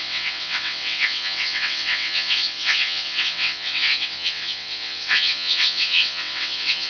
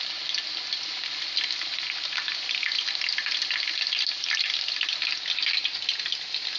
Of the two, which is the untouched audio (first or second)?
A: second